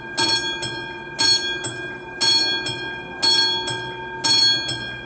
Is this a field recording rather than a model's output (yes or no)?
yes